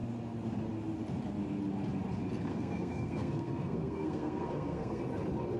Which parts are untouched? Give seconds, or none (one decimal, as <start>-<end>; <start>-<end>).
0.0-2.5; 5.0-5.6